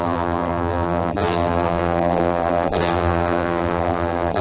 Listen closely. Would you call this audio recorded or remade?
remade